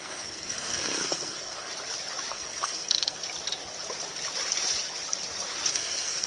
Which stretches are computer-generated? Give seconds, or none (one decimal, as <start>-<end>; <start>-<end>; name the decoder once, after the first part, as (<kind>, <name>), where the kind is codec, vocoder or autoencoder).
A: 0.0-1.7 (codec, SNAC); 2.3-3.2; 5.7-6.3